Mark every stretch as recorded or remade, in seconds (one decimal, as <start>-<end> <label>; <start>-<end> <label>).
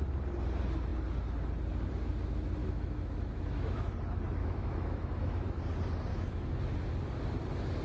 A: 0.0-2.6 recorded; 2.6-3.9 remade; 3.9-4.4 recorded; 4.4-5.6 remade; 5.6-6.1 recorded; 6.1-6.6 remade; 6.6-7.8 recorded